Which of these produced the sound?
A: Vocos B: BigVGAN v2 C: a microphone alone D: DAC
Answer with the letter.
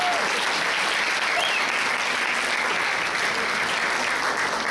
C